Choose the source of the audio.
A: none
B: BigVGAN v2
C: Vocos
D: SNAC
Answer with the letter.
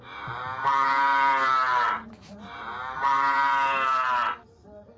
B